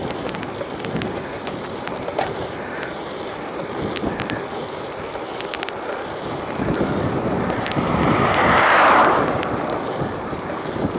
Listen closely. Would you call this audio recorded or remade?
remade